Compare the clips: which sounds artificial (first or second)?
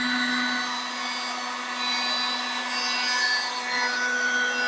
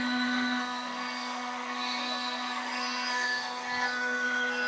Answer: second